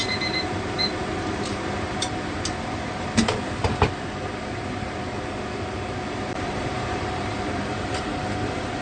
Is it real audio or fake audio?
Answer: fake